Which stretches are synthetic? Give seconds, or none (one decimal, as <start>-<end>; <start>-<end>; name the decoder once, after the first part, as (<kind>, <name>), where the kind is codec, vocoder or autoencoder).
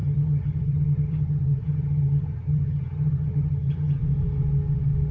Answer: 0.0-4.0 (vocoder, HiFi-GAN)